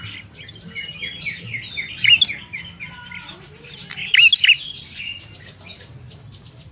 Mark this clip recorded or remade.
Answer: recorded